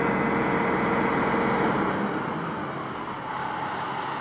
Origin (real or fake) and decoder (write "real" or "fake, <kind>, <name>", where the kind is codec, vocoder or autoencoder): real